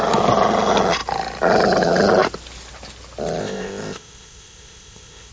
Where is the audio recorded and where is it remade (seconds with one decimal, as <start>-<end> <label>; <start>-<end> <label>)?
0.0-3.4 recorded; 3.4-5.3 remade